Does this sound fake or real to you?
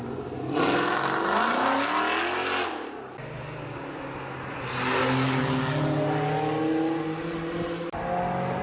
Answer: real